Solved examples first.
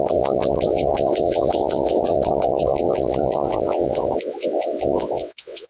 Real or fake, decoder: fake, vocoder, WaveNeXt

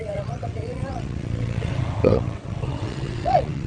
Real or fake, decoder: fake, vocoder, WaveNeXt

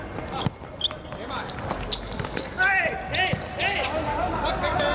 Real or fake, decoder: real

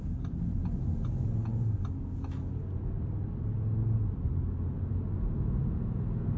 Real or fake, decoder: real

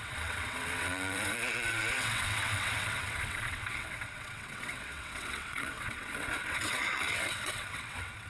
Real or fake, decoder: fake, vocoder, WaveNeXt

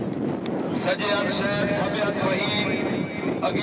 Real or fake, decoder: real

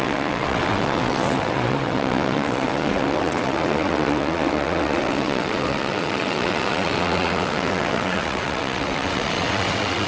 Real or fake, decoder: fake, vocoder, WaveNeXt